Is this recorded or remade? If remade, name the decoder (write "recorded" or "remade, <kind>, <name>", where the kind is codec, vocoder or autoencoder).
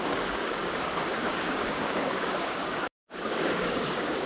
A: remade, codec, DAC